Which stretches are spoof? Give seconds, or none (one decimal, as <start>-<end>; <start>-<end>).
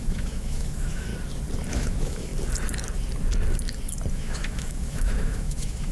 0.0-1.1; 1.7-2.3; 4.1-5.9